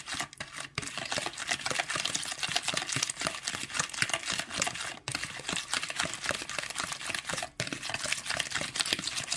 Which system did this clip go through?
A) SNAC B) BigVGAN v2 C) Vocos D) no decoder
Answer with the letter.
D